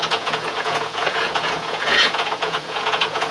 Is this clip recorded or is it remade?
remade